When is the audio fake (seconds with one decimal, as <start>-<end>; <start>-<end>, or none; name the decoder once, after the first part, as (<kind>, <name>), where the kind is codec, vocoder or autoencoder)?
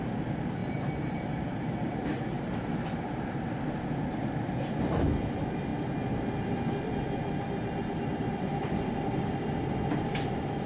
0.6-1.7 (vocoder, BigVGAN v2); 8.1-8.7